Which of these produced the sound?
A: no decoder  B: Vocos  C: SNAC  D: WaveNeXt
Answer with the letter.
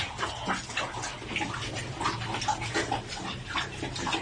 A